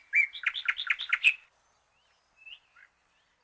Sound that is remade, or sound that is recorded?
recorded